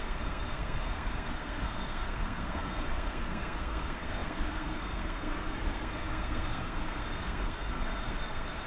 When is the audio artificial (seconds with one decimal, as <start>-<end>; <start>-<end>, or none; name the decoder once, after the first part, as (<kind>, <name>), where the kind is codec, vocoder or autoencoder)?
0.0-8.7 (codec, SNAC)